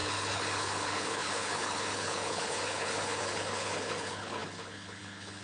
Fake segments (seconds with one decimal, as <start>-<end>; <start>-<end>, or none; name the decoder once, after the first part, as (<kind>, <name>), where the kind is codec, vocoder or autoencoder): 0.0-5.4 (codec, HILCodec)